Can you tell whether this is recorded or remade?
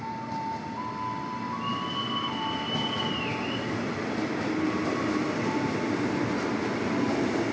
recorded